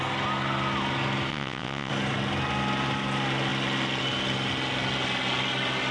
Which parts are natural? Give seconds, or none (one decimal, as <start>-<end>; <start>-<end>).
0.0-1.3; 1.9-5.9